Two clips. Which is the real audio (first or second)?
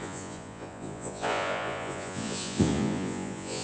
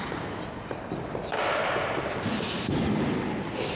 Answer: second